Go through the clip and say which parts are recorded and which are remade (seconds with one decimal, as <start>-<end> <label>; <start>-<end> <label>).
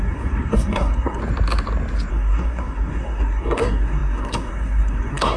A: 0.0-1.2 remade; 1.2-2.1 recorded; 2.1-5.4 remade